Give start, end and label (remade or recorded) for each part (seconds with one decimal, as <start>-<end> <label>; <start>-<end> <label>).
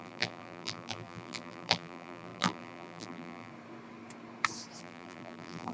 0.0-3.5 remade; 3.5-4.8 recorded; 4.8-5.7 remade